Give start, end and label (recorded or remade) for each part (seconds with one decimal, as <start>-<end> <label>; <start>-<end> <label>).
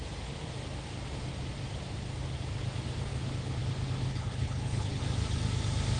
0.0-4.1 recorded; 4.1-5.0 remade; 5.0-6.0 recorded